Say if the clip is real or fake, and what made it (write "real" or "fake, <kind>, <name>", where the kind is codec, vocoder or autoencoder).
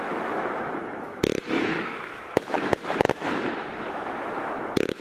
fake, autoencoder, DAC-VAE